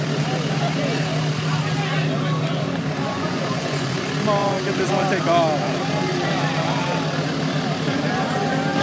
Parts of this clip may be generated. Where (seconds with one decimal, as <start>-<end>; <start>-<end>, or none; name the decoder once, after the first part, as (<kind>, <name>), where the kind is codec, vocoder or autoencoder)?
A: 3.0-4.0 (vocoder, Vocos); 4.4-4.9